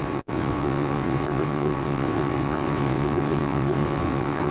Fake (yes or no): yes